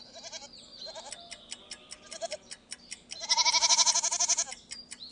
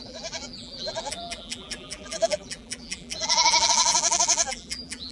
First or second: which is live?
first